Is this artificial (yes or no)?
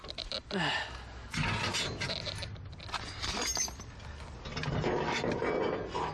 no